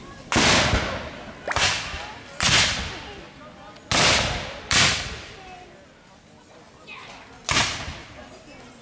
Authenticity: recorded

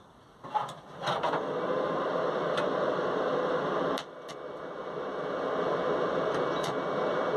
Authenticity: recorded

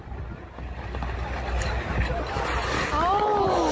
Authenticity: recorded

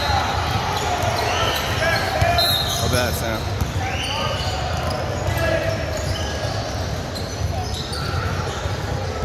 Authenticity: recorded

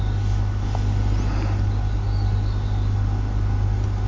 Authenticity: recorded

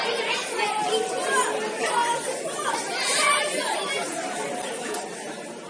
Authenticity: recorded